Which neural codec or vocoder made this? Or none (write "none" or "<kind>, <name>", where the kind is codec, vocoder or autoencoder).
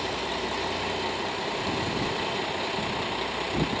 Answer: none